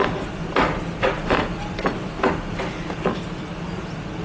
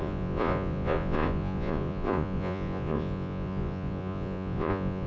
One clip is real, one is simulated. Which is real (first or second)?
first